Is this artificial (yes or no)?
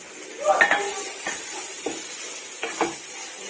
no